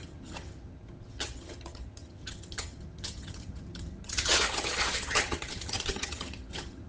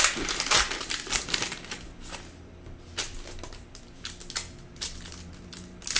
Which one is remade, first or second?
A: first